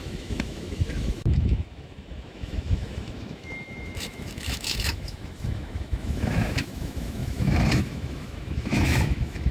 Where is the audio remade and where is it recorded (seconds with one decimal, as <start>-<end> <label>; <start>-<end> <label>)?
0.0-9.5 remade